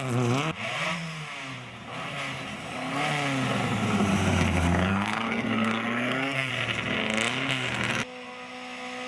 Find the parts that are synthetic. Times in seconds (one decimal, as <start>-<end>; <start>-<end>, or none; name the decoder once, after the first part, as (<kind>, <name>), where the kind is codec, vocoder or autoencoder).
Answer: 4.9-6.5 (codec, SNAC)